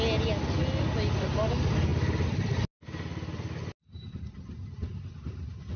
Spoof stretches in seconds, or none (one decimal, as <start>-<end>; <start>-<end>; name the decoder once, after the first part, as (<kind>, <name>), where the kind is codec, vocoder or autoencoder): none